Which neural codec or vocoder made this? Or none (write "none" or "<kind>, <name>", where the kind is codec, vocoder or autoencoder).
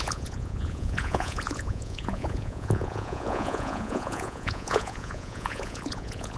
vocoder, Vocos